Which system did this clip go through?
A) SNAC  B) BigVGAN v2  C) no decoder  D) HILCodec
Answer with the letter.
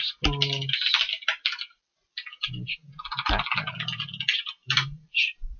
C